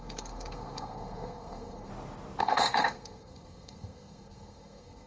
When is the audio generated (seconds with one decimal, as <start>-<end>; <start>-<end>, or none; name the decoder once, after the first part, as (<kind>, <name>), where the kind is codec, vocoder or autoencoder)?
0.0-1.9 (codec, SNAC); 2.4-5.1